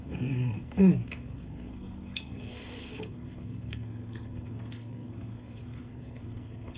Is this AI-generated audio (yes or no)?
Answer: yes